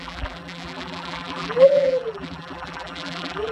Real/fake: fake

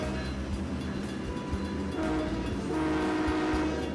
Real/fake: real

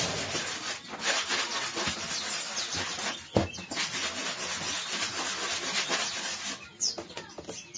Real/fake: real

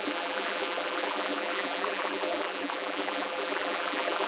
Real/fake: fake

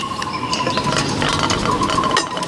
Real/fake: real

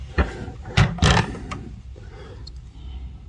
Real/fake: real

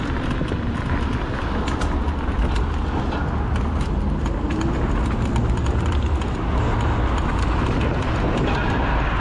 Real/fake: real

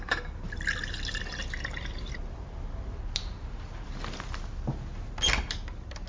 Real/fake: real